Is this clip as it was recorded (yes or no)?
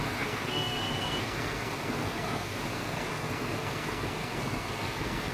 no